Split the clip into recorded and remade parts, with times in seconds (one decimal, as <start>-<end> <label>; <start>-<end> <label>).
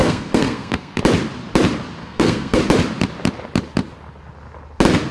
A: 0.0-1.0 remade; 1.0-2.0 recorded; 2.0-2.6 remade; 2.6-5.1 recorded